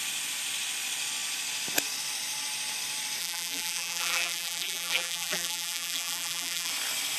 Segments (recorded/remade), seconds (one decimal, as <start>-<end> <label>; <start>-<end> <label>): 0.0-3.2 recorded; 3.2-6.7 remade; 6.7-7.2 recorded